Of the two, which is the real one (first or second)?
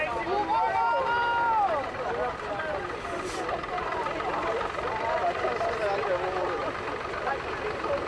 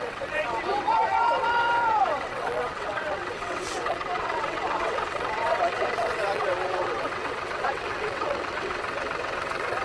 first